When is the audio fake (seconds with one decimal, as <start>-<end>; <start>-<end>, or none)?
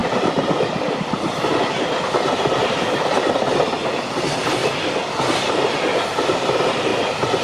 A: 4.0-4.6; 5.5-7.4